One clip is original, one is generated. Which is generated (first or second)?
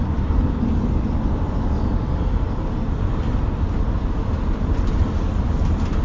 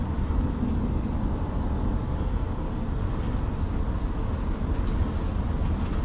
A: first